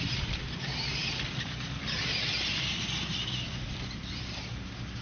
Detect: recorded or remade remade